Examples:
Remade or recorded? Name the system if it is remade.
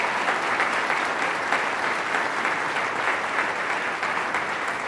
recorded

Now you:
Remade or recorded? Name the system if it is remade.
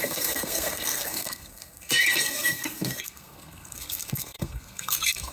remade, codec, SNAC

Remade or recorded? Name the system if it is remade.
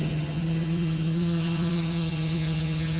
remade, vocoder, HiFi-GAN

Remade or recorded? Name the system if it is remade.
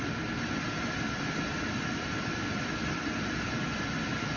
recorded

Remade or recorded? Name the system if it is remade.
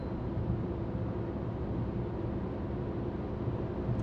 recorded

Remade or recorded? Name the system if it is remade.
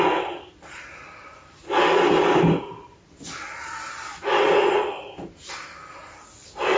recorded